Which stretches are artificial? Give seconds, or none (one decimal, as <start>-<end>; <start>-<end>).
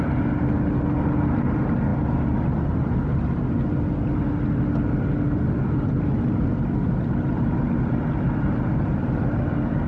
none